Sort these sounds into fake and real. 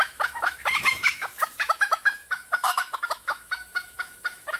fake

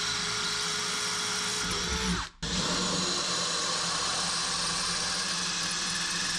real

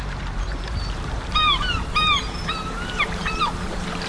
fake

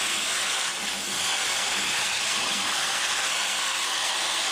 fake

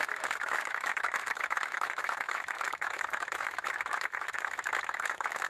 fake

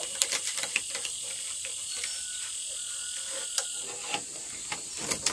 real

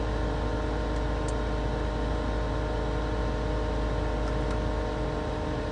real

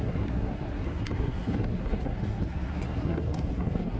fake